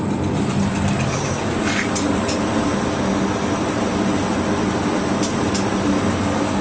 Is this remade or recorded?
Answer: recorded